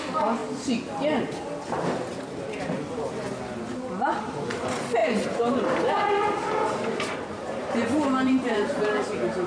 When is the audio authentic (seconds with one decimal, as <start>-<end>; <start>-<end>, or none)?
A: 0.0-5.0